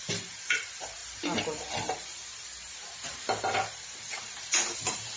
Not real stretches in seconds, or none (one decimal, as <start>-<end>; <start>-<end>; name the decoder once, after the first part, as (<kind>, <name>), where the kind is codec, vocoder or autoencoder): 0.0-5.2 (vocoder, BigVGAN v2)

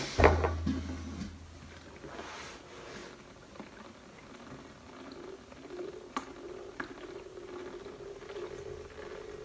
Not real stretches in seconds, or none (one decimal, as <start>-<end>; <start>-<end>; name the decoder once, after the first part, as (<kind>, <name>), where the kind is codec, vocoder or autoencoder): none

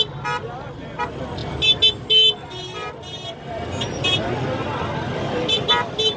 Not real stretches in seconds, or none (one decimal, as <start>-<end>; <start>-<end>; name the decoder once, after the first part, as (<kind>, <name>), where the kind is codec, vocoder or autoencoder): none

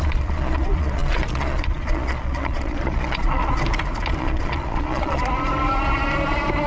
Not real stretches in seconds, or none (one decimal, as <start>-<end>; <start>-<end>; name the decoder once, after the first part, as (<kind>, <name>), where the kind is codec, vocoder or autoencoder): 0.0-3.4 (vocoder, Vocos); 4.2-5.2

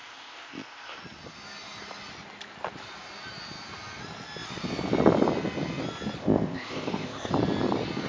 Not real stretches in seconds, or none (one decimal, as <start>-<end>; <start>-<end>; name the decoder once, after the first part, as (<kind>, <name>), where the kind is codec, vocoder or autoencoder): 0.0-1.0 (codec, ZipCodec); 6.2-7.3

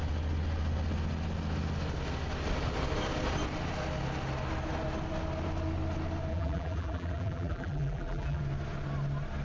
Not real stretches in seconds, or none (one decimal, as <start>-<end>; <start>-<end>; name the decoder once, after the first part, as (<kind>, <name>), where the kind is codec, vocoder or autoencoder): 6.3-8.4 (vocoder, BigVGAN v2)

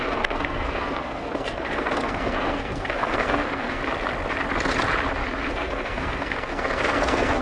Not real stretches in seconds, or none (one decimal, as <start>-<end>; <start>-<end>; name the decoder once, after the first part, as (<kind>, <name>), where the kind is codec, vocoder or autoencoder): 0.0-3.8 (codec, SNAC); 5.5-7.4

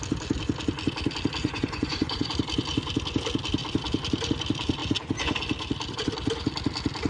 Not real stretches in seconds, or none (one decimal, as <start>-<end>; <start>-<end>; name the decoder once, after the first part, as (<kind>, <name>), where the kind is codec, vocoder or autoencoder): 1.4-2.3 (vocoder, Vocos)